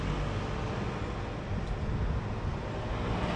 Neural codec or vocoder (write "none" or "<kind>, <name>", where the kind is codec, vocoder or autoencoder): none